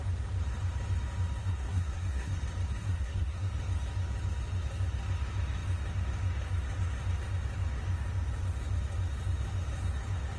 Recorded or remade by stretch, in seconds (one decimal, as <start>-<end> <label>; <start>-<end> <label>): 0.0-1.4 recorded; 1.4-2.4 remade; 2.4-2.8 recorded; 2.8-3.5 remade; 3.5-10.4 recorded